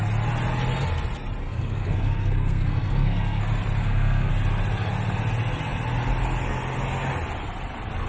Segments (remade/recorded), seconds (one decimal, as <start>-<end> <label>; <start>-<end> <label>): 0.0-1.4 recorded; 1.4-3.4 remade; 3.4-3.8 recorded; 3.8-4.3 remade; 4.3-8.1 recorded